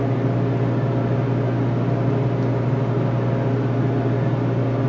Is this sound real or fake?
real